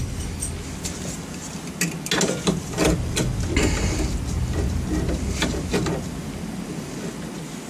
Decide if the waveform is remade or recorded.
recorded